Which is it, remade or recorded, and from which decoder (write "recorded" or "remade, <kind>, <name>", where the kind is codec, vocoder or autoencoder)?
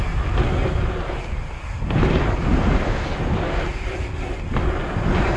recorded